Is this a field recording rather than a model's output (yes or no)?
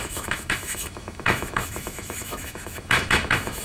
no